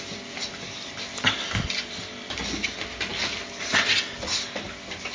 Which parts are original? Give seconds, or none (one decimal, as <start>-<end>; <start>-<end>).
0.0-5.1